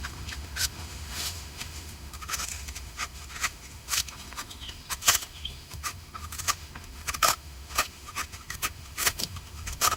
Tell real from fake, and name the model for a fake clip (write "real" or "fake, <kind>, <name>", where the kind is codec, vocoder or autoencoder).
fake, autoencoder, DAC-VAE